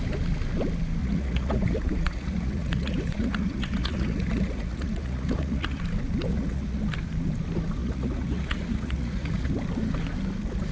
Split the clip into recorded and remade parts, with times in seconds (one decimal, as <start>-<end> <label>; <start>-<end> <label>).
0.0-1.0 recorded; 1.0-5.8 remade; 5.8-6.3 recorded; 6.3-6.8 remade; 6.8-7.8 recorded; 7.8-9.5 remade; 9.5-10.7 recorded